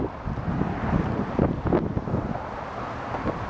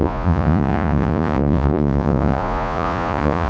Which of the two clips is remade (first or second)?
second